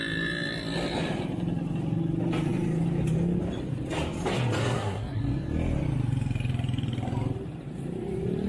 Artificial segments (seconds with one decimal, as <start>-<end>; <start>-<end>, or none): 4.6-5.2

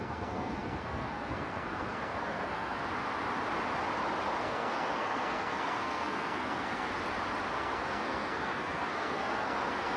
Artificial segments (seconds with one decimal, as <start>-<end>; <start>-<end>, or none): 0.0-2.8; 4.4-6.9; 7.5-10.0

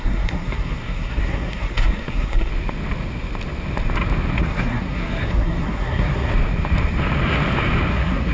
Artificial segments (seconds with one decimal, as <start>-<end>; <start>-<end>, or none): 0.0-2.5; 4.4-6.3; 7.9-8.3